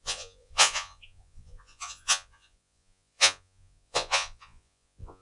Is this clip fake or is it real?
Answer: fake